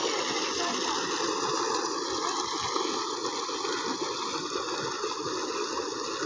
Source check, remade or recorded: recorded